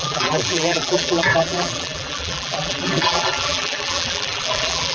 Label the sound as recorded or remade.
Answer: remade